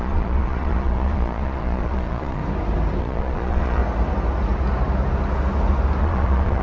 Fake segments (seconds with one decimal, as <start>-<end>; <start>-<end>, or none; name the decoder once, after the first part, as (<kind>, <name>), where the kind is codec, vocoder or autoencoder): 0.0-2.4 (vocoder, Vocos); 3.0-3.8; 6.0-6.6